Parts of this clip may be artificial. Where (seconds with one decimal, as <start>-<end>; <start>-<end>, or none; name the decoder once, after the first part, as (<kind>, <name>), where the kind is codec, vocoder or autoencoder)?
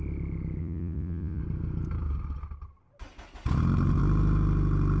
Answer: 0.6-1.4 (vocoder, Vocos)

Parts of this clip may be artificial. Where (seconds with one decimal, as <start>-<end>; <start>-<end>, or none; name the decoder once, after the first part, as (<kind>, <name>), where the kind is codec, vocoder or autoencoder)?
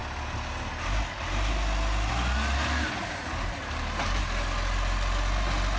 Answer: 3.1-4.2 (vocoder, BigVGAN v2)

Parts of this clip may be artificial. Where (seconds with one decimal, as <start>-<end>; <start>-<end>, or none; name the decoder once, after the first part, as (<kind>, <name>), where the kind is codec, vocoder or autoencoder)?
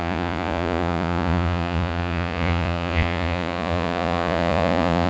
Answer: 0.0-5.1 (vocoder, Vocos)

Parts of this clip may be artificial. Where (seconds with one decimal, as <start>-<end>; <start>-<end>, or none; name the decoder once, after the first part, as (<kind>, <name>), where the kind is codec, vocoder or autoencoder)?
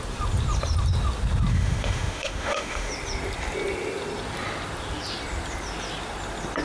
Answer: 1.5-2.9 (autoencoder, DAC-VAE)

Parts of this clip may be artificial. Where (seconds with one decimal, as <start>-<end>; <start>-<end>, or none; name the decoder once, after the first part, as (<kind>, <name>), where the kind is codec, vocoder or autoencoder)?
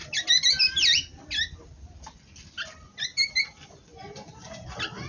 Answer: 0.0-1.1 (vocoder, BigVGAN v2); 2.5-5.1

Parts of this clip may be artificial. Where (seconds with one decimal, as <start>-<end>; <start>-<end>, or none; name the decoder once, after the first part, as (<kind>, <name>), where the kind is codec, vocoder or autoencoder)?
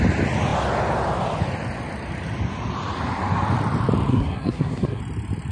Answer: 4.1-5.0 (codec, SNAC)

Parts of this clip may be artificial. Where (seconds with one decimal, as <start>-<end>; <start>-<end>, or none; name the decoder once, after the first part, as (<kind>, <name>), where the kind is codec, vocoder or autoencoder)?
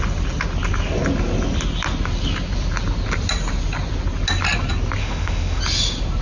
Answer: 5.0-5.6 (autoencoder, DAC-VAE)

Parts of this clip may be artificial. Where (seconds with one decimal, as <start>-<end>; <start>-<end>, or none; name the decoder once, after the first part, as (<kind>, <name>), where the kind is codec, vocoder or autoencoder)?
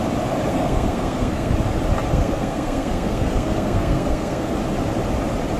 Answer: 0.5-1.5 (codec, SNAC); 2.1-4.5